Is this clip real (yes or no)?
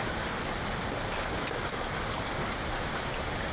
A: yes